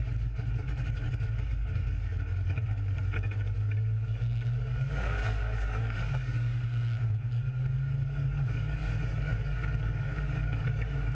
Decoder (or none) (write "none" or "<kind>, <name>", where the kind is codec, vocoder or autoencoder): codec, DAC